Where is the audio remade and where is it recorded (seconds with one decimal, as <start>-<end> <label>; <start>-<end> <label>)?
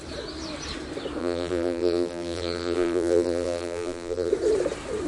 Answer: 0.0-1.2 recorded; 1.2-4.3 remade; 4.3-5.1 recorded